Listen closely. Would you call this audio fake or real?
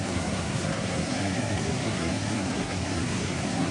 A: fake